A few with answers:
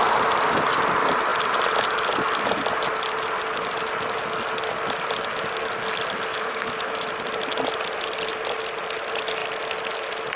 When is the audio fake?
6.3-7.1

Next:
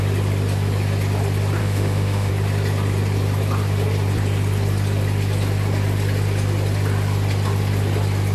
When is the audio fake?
1.6-2.3